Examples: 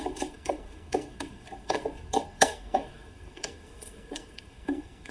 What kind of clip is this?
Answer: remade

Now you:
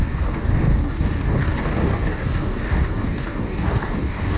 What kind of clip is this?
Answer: remade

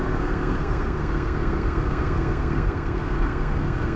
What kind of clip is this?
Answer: remade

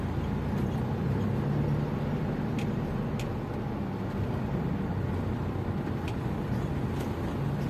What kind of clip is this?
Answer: recorded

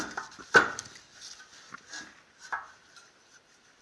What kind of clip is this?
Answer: recorded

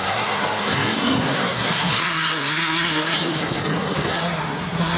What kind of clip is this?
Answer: remade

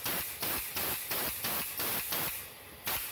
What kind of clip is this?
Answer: recorded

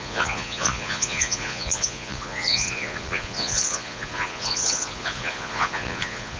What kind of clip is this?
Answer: remade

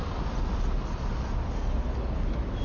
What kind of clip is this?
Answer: recorded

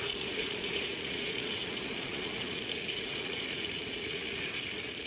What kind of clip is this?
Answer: remade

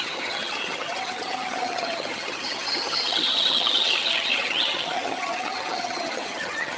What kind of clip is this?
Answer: remade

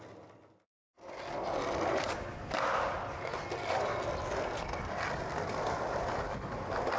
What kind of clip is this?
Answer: recorded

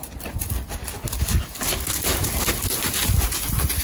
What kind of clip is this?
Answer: recorded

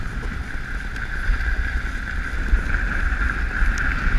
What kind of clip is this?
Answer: recorded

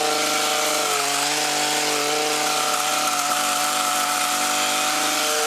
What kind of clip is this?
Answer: recorded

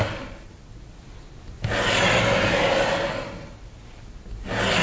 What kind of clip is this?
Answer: recorded